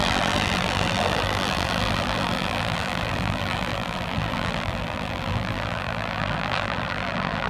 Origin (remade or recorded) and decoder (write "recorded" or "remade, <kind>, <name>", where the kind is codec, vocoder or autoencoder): remade, vocoder, BigVGAN v2